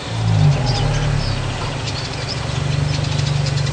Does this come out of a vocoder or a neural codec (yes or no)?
no